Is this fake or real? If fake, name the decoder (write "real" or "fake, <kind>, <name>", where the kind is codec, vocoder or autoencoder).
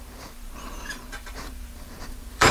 fake, vocoder, BigVGAN v2